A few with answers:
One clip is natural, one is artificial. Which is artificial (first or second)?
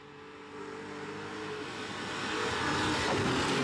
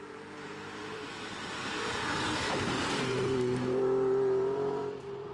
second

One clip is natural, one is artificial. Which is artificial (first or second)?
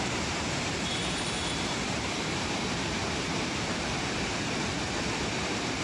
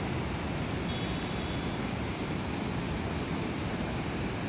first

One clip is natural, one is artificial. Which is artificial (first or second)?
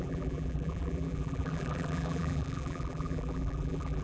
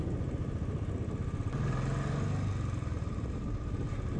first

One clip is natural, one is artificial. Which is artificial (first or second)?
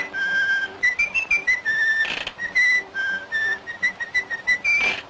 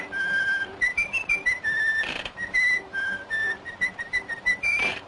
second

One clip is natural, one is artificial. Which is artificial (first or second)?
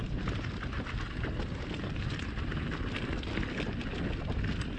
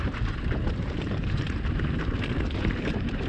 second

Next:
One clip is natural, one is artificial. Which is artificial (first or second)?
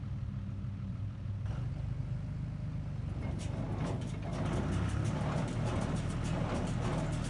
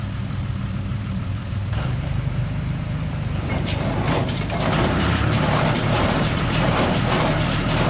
second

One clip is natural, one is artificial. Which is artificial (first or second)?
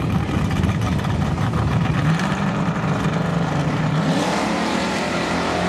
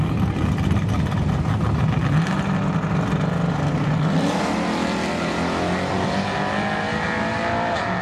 first